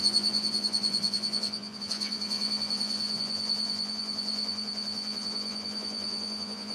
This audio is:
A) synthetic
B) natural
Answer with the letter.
A